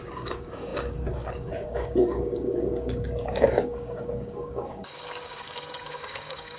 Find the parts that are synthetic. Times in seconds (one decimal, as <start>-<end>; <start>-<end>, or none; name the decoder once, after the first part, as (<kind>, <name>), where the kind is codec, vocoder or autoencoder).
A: 0.0-6.6 (codec, DAC)